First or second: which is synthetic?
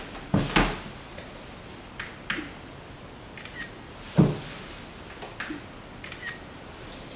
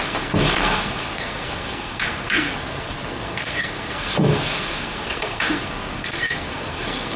second